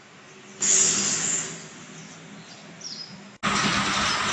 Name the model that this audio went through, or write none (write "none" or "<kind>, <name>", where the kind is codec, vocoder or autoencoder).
none